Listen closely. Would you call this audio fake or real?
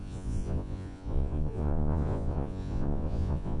fake